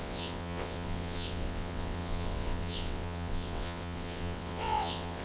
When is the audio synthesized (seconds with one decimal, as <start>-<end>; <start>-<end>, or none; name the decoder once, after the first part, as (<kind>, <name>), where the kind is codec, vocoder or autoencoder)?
0.0-5.2 (vocoder, WaveNeXt)